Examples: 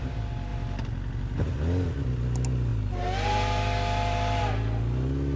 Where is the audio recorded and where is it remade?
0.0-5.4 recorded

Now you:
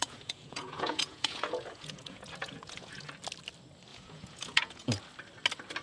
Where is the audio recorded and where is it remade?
0.0-3.1 remade; 3.1-3.9 recorded; 3.9-5.0 remade; 5.0-5.8 recorded

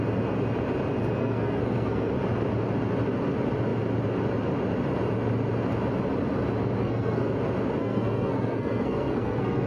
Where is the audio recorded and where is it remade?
0.0-1.2 recorded; 1.2-2.1 remade; 2.1-6.8 recorded; 6.8-7.3 remade; 7.3-7.8 recorded; 7.8-9.7 remade

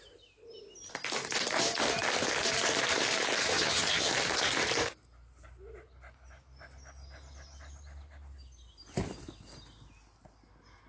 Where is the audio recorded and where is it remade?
0.0-3.5 recorded; 3.5-4.1 remade; 4.1-10.9 recorded